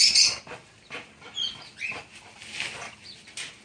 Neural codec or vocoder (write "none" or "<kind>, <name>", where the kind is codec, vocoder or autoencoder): none